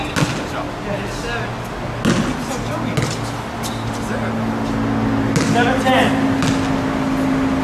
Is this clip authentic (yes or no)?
yes